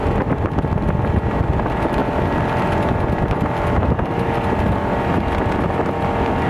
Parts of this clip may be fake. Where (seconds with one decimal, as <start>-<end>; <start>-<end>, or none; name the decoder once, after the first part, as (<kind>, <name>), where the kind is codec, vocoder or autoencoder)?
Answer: none